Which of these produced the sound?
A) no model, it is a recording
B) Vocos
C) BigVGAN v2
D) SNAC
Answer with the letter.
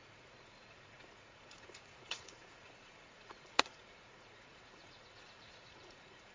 B